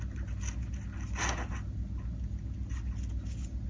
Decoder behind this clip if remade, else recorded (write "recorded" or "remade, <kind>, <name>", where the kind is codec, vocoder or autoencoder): recorded